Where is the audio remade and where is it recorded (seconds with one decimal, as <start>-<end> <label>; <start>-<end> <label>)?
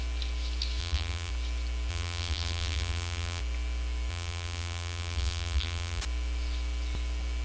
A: 0.0-0.8 recorded; 0.8-1.3 remade; 1.3-1.9 recorded; 1.9-3.4 remade; 3.4-4.1 recorded; 4.1-6.0 remade; 6.0-7.4 recorded